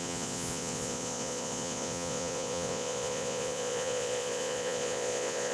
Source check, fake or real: fake